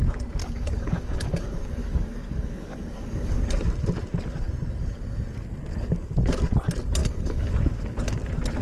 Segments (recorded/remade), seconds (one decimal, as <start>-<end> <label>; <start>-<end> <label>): 0.0-0.4 recorded; 0.4-3.4 remade; 3.4-7.0 recorded; 7.0-7.5 remade; 7.5-8.6 recorded